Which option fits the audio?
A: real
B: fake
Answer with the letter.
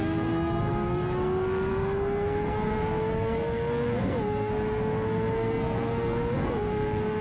B